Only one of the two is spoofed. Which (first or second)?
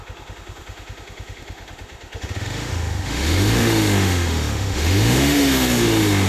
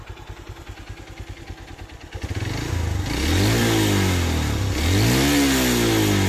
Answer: first